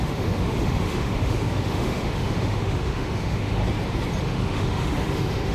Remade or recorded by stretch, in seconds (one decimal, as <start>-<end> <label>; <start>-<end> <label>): 0.0-3.6 remade; 3.6-4.2 recorded; 4.2-5.5 remade